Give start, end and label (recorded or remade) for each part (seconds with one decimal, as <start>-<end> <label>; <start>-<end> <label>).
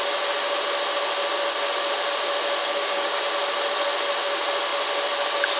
0.0-2.6 recorded; 2.6-3.2 remade; 3.2-5.6 recorded